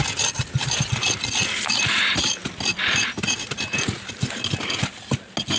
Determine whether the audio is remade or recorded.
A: recorded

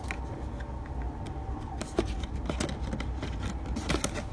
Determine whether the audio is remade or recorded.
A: recorded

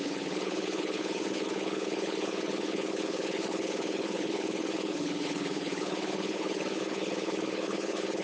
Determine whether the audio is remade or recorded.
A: remade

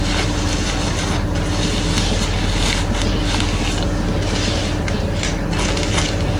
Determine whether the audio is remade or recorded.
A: recorded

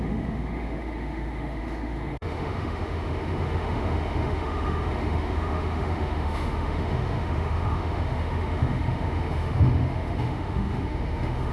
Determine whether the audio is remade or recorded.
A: remade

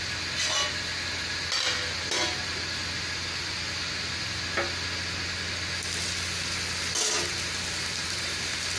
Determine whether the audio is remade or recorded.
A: recorded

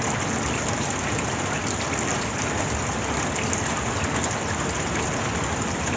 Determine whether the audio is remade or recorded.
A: recorded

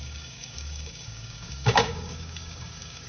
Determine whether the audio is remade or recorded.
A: remade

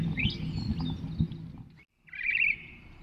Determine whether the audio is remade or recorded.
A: recorded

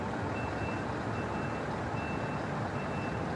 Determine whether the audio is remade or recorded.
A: recorded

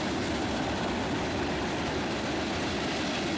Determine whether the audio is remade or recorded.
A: recorded